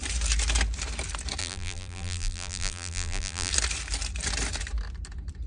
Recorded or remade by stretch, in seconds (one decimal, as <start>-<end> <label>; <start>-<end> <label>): 0.0-1.4 recorded; 1.4-3.5 remade; 3.5-5.5 recorded